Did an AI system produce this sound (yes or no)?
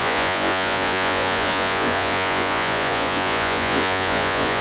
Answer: yes